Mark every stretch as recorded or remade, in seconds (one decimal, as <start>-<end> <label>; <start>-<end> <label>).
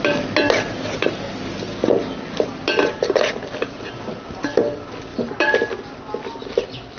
0.0-7.0 recorded